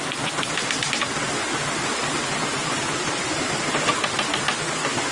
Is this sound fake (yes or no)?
no